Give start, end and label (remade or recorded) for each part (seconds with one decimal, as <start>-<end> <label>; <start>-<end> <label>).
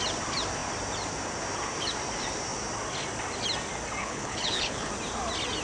0.0-4.0 recorded; 4.0-4.9 remade; 4.9-5.6 recorded